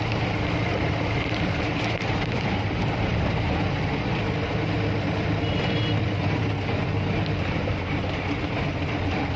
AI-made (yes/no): yes